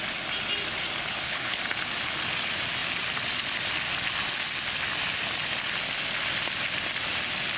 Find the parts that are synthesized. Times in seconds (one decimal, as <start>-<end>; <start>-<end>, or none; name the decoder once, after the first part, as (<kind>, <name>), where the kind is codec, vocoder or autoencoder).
1.1-1.6 (codec, HILCodec)